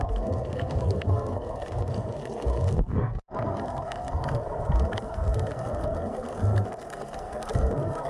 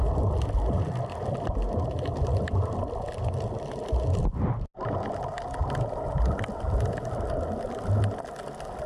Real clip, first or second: second